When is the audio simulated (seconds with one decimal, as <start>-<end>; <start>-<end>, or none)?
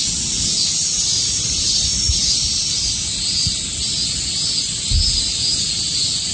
none